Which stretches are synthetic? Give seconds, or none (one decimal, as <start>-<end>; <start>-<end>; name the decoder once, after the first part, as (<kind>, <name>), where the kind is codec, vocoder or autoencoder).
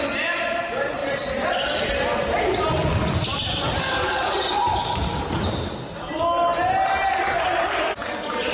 1.0-2.7 (vocoder, BigVGAN v2)